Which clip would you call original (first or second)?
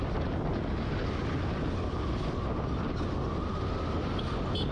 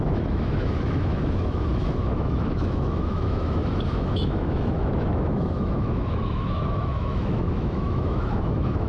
first